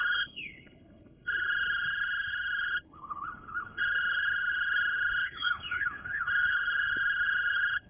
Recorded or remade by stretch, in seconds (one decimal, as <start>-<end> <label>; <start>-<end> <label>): 0.0-7.9 remade